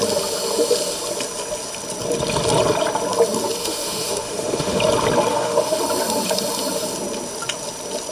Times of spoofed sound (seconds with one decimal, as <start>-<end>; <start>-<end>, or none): 3.6-4.8; 5.3-5.8